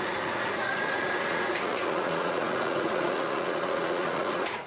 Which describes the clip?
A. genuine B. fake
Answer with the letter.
B